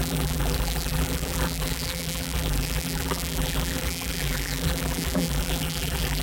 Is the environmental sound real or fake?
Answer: fake